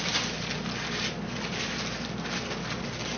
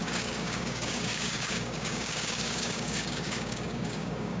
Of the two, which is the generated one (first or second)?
second